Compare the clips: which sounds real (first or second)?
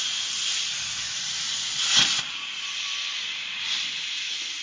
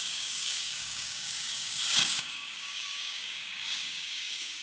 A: first